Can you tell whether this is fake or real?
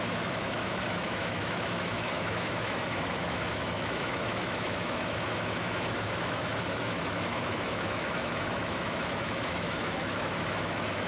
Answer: fake